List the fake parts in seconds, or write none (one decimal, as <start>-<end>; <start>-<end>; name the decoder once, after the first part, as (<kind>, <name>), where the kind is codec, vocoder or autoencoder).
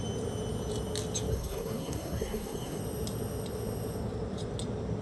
1.3-2.8 (codec, SNAC)